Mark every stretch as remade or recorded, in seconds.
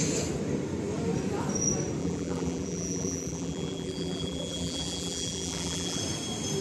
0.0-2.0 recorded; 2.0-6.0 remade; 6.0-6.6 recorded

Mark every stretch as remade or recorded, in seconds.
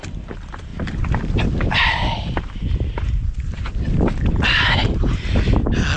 0.0-0.7 recorded; 0.7-3.9 remade; 3.9-6.0 recorded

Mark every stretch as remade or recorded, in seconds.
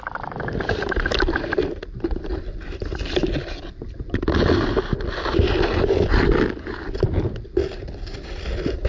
0.0-8.9 recorded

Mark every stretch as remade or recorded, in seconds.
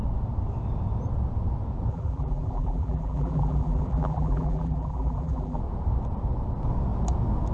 0.0-1.9 recorded; 1.9-5.6 remade; 5.6-7.5 recorded